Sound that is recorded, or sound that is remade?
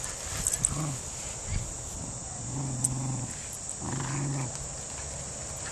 recorded